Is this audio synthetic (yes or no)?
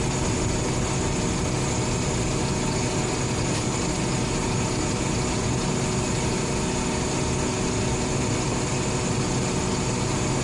no